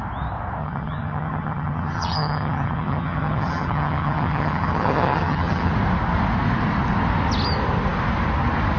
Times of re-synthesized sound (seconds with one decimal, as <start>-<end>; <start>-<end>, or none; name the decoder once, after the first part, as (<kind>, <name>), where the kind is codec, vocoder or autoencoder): 0.6-5.7 (vocoder, HiFi-GAN)